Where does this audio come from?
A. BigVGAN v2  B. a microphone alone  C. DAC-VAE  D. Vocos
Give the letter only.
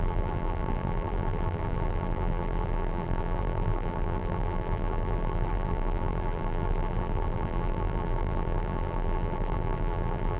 A